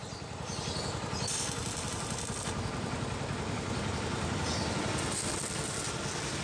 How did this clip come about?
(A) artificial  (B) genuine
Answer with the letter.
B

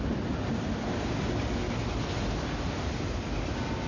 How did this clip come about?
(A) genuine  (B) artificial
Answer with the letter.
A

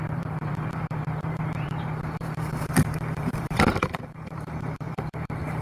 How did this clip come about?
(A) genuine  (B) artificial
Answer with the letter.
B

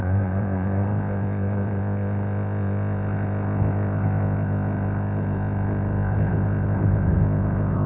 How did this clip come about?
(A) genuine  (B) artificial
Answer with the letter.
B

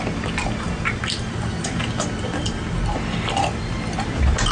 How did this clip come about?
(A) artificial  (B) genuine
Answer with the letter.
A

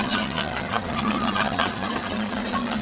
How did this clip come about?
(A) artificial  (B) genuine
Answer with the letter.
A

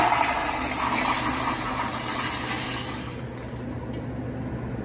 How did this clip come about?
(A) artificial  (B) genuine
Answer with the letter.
B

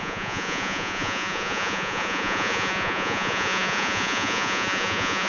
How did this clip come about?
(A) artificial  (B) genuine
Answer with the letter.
A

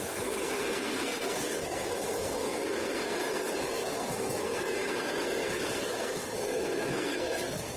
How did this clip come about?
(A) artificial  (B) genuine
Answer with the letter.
A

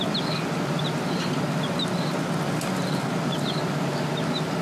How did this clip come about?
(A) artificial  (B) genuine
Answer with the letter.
B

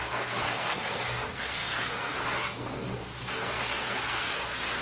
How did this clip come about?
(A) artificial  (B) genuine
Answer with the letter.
A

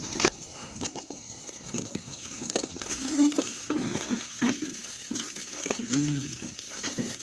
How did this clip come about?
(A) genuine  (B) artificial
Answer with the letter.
B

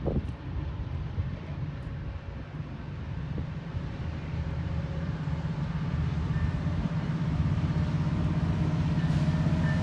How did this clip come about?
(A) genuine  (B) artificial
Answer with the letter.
B